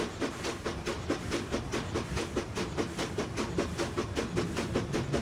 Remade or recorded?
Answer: recorded